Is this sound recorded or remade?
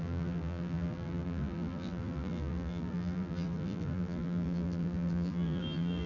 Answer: remade